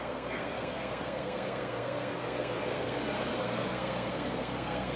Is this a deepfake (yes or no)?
yes